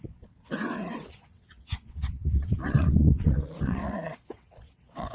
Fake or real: fake